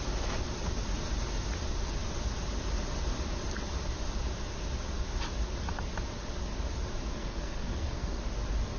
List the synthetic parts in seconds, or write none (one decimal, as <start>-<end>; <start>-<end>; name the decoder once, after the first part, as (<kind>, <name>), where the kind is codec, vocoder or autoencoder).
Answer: 7.2-8.2 (codec, SNAC)